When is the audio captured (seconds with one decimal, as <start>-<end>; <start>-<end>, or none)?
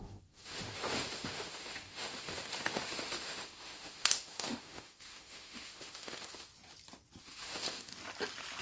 6.5-7.2; 7.9-8.6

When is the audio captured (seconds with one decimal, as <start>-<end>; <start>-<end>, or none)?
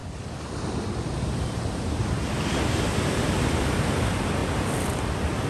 0.0-5.5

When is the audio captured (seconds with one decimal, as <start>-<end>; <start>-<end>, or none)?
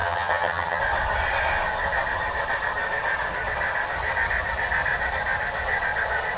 0.8-6.4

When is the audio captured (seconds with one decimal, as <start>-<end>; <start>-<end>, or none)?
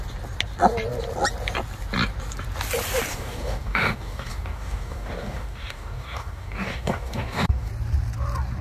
0.0-3.1; 7.7-8.6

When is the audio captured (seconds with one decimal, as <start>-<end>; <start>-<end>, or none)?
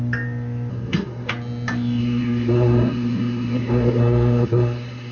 0.0-0.7; 1.3-2.0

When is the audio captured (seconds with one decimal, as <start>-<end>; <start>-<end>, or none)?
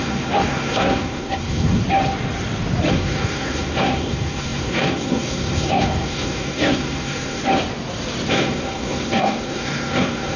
1.8-2.9; 7.4-8.3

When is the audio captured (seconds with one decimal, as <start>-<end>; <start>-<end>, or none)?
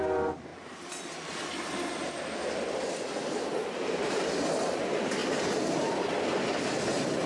0.0-0.5; 1.5-3.5; 4.1-7.3